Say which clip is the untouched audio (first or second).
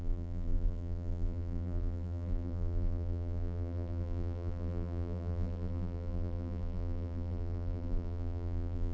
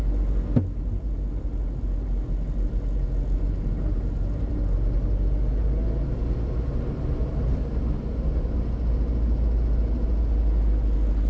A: second